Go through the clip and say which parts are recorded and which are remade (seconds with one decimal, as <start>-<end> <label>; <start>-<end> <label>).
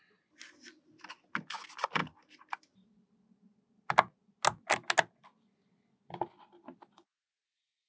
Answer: 0.0-7.9 recorded